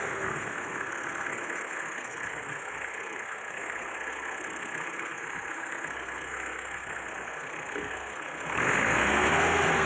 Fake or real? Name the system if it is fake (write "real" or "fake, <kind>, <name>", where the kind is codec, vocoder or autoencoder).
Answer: fake, codec, SNAC